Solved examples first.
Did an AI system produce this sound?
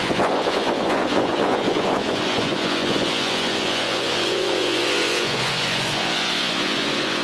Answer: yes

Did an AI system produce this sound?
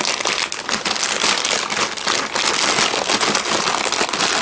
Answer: no